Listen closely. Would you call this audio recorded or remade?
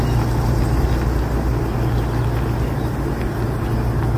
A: recorded